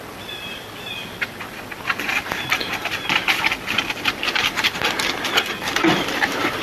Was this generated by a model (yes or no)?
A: yes